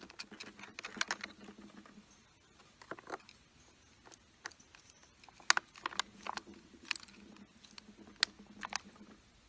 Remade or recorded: recorded